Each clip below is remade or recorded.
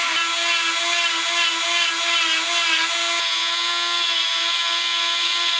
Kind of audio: recorded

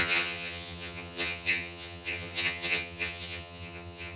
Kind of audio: remade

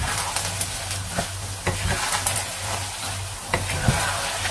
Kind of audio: recorded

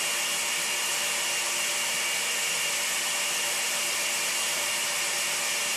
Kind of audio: recorded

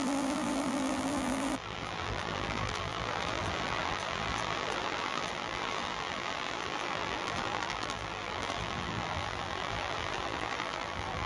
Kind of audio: remade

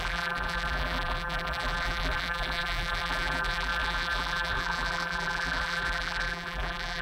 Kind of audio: remade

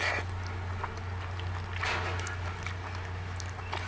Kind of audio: recorded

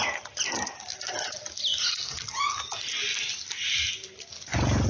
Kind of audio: recorded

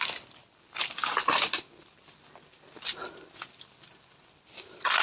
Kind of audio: recorded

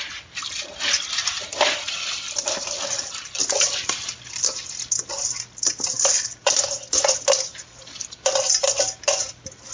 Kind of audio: recorded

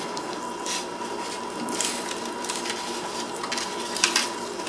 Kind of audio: recorded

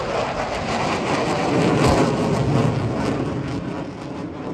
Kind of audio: recorded